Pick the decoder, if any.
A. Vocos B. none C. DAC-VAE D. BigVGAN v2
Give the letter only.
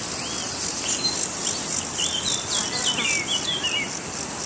B